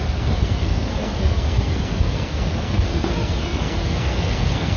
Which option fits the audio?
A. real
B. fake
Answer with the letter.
B